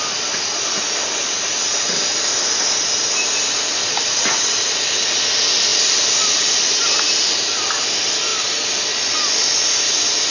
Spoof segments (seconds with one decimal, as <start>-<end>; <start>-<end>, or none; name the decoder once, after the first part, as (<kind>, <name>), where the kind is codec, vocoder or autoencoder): 5.7-6.7 (vocoder, BigVGAN v2); 8.3-8.9